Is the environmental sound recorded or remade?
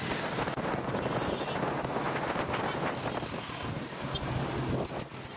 recorded